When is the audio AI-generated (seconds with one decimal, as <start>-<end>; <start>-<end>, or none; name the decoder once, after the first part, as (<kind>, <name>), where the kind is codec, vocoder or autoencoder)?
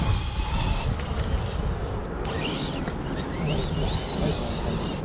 none